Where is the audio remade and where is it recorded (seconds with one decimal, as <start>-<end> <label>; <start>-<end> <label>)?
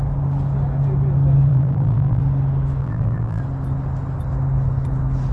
0.0-1.5 recorded; 1.5-2.2 remade; 2.2-2.8 recorded; 2.8-3.4 remade; 3.4-5.3 recorded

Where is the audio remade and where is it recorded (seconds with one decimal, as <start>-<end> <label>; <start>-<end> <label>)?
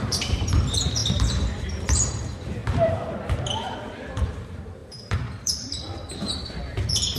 0.0-2.6 remade; 2.6-3.5 recorded; 3.5-7.2 remade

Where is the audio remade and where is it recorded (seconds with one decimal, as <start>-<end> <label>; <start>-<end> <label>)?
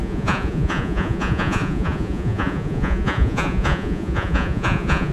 0.0-5.1 remade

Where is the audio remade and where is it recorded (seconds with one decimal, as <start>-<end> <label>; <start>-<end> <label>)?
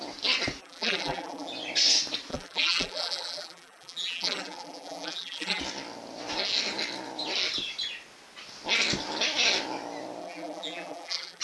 0.0-0.6 recorded; 0.6-1.5 remade; 1.5-2.3 recorded; 2.3-5.6 remade; 5.6-10.2 recorded; 10.2-11.4 remade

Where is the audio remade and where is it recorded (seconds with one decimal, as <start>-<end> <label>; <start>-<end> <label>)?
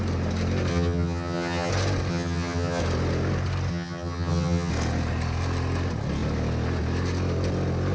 0.0-0.7 recorded; 0.7-1.7 remade; 1.7-2.1 recorded; 2.1-2.8 remade; 2.8-3.7 recorded; 3.7-4.7 remade; 4.7-7.9 recorded